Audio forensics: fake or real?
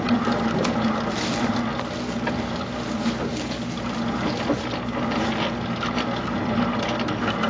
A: real